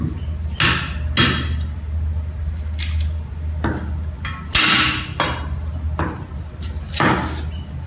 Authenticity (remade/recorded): recorded